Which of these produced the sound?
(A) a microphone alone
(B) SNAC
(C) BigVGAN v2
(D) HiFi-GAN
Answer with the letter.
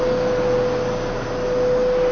A